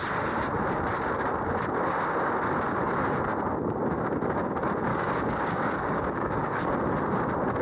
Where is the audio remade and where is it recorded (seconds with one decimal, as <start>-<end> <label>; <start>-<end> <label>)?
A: 0.0-4.9 recorded; 4.9-6.7 remade; 6.7-7.6 recorded